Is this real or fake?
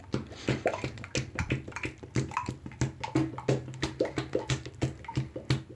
real